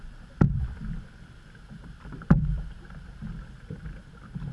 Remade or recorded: remade